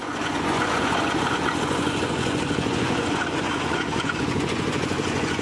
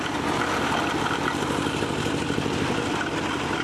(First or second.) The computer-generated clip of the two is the first